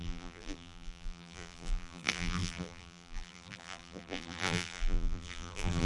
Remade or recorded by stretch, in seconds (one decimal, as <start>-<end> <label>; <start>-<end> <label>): 0.0-5.9 remade